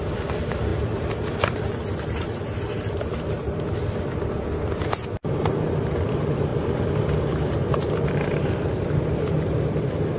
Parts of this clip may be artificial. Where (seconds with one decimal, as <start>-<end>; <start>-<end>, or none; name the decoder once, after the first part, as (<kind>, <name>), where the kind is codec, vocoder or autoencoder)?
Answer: 0.0-0.7 (vocoder, BigVGAN v2); 2.8-10.2